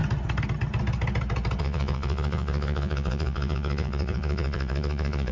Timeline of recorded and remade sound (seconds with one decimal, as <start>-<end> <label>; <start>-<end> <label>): 0.0-1.6 recorded; 1.6-5.3 remade